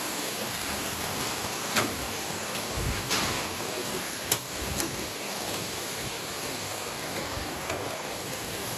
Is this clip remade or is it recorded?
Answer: remade